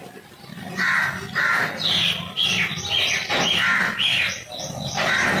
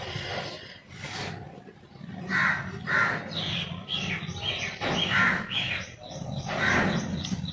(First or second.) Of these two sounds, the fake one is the second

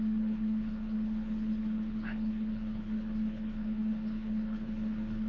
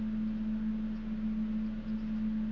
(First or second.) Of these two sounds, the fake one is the first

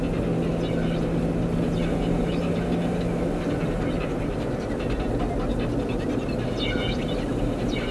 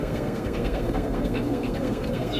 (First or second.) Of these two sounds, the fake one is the second